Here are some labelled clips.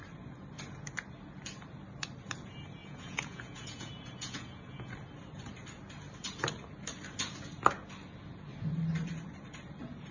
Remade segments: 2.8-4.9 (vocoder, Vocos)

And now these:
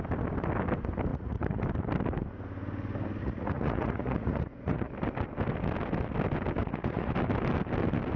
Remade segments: 1.1-1.6 (vocoder, Vocos); 3.2-4.9; 6.6-7.1

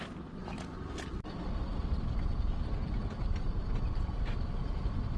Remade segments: none

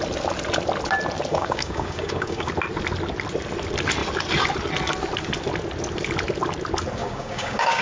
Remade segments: 1.3-2.5 (codec, DAC); 7.0-7.8

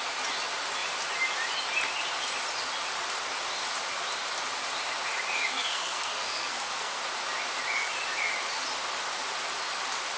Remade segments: 5.5-7.0 (codec, SNAC)

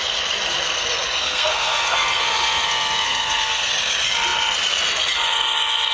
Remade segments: 1.2-3.7 (codec, SNAC)

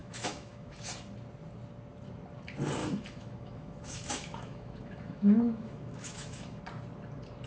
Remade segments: 0.0-0.9 (autoencoder, DAC-VAE); 2.8-6.6